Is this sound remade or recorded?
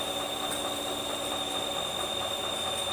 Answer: recorded